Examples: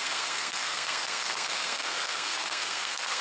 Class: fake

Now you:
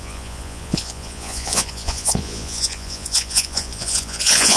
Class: fake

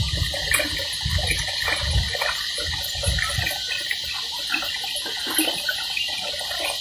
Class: real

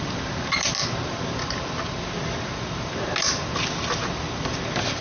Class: real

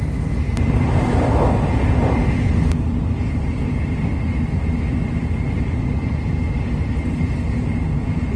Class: real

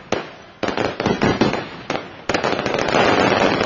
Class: real